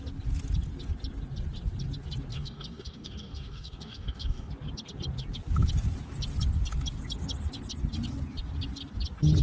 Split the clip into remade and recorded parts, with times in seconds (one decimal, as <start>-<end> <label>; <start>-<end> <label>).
0.0-2.3 recorded; 2.3-4.5 remade; 4.5-9.4 recorded